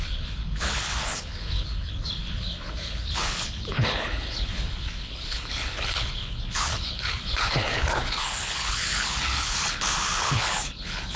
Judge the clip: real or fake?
fake